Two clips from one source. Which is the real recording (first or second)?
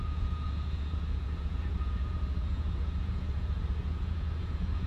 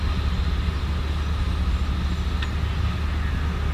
second